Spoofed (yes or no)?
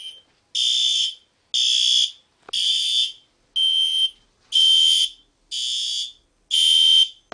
no